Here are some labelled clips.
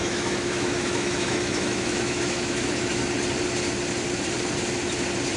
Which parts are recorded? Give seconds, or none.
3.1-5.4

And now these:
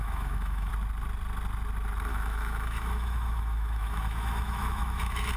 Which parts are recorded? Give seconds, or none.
0.7-2.1

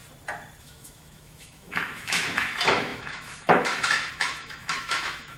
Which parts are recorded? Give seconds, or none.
0.0-0.6

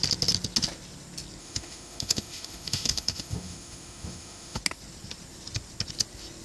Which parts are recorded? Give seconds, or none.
0.0-1.4; 4.6-6.4

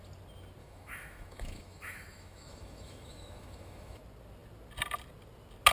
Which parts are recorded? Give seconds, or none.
0.0-0.6; 4.0-5.7

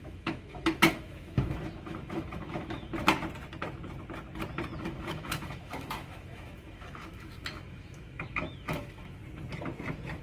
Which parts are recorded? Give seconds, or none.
2.9-4.8; 9.2-10.2